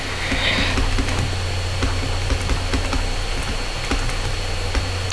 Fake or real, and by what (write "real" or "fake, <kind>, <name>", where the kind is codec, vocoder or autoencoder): real